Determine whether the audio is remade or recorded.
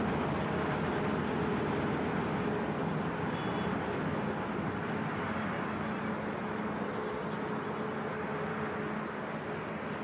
recorded